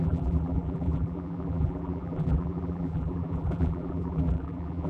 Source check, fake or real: fake